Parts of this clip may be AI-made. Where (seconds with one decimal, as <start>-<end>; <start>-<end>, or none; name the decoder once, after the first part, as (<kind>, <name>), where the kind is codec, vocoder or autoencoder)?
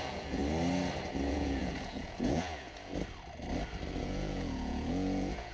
0.0-0.4 (vocoder, Vocos); 1.3-2.9; 4.0-5.5